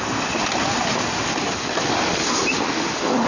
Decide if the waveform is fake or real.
real